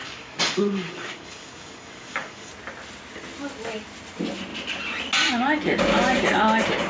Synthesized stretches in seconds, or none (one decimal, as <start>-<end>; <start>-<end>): 0.0-2.5